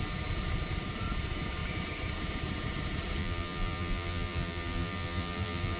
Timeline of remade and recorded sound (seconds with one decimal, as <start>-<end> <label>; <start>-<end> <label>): 0.0-3.2 recorded; 3.2-5.8 remade